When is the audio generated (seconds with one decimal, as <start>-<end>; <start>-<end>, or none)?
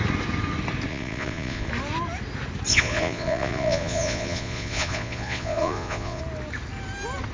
0.9-1.7; 2.7-6.2